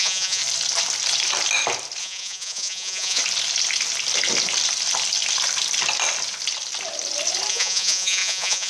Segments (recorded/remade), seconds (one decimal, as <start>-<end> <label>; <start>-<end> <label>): 0.0-0.4 remade; 0.4-2.0 recorded; 2.0-3.2 remade; 3.2-7.5 recorded; 7.5-8.7 remade